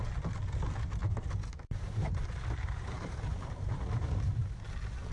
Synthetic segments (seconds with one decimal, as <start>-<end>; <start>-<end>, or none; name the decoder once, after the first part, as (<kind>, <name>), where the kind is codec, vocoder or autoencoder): 1.0-4.1 (vocoder, BigVGAN v2)